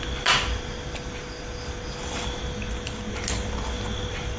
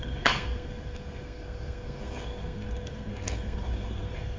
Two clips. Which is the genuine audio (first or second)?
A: first